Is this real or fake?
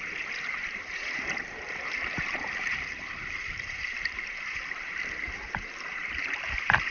fake